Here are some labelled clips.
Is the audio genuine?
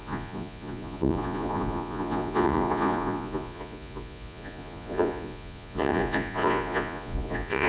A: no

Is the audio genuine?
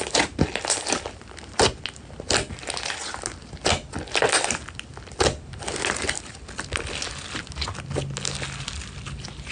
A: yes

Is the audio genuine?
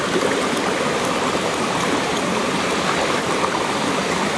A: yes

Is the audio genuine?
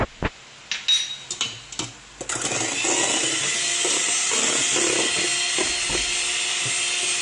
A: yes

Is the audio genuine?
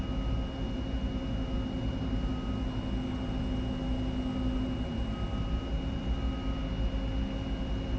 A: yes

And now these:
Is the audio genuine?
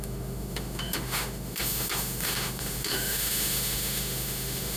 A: no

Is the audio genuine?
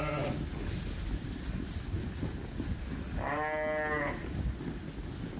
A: yes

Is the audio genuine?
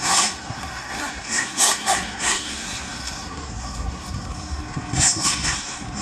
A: no